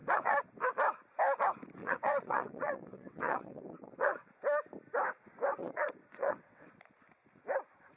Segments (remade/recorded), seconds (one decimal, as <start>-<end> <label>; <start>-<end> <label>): 0.0-0.5 remade; 0.5-1.8 recorded; 1.8-4.3 remade; 4.3-5.6 recorded; 5.6-6.7 remade; 6.7-8.0 recorded